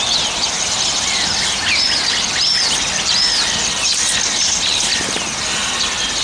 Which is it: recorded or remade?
recorded